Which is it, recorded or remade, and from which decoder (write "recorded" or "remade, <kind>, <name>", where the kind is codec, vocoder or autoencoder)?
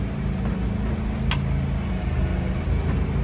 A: recorded